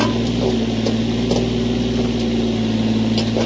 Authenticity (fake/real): real